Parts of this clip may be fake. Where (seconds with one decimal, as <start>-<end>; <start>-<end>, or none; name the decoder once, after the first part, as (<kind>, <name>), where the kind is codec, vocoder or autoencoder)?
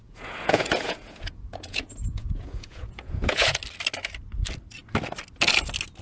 0.0-3.6 (vocoder, Vocos)